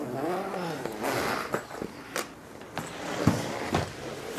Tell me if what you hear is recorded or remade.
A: recorded